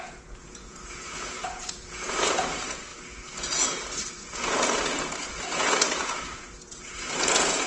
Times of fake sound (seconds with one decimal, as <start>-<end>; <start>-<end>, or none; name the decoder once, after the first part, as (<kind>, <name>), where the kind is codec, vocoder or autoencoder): 0.0-7.7 (vocoder, Vocos)